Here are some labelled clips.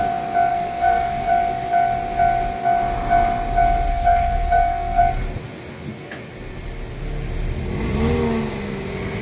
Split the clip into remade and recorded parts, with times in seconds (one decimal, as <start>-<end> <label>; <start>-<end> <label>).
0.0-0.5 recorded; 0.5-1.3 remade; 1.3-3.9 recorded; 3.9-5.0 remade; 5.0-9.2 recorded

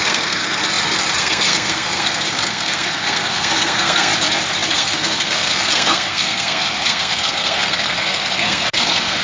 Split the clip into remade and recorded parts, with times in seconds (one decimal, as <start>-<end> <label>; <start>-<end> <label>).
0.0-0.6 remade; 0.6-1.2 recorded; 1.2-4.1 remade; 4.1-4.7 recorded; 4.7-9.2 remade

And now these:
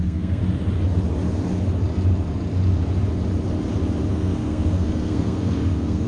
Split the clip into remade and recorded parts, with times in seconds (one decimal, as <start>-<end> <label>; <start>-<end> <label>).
0.0-0.4 remade; 0.4-4.1 recorded; 4.1-6.1 remade

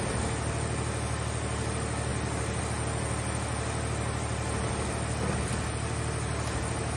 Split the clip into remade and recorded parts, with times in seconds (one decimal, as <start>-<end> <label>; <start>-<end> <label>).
0.0-7.0 recorded